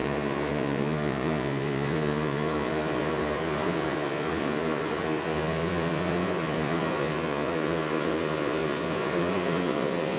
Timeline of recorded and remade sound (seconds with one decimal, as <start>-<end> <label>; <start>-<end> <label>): 0.0-10.2 remade